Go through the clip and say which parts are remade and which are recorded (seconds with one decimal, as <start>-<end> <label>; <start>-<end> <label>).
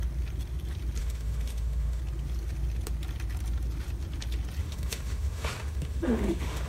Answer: 0.0-1.0 recorded; 1.0-2.0 remade; 2.0-4.6 recorded; 4.6-6.7 remade